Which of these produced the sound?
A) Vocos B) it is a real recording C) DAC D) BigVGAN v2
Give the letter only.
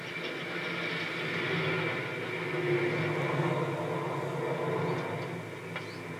B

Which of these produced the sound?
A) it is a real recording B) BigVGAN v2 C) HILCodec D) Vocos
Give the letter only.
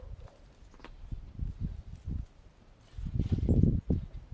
A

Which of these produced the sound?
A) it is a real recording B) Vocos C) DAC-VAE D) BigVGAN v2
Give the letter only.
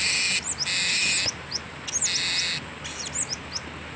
A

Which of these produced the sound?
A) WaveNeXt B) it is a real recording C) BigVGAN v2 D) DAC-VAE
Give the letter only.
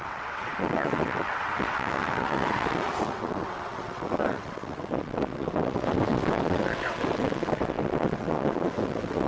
A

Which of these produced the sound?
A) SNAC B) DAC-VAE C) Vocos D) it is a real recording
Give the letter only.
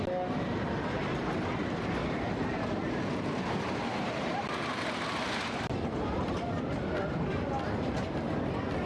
D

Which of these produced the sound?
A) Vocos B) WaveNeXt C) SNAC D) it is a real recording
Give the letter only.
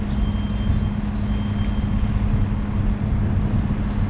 D